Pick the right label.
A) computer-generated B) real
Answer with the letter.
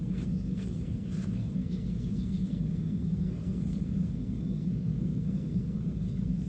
A